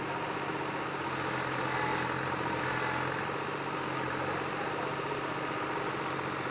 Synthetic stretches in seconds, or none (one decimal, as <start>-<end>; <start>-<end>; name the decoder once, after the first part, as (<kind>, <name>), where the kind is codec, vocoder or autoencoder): none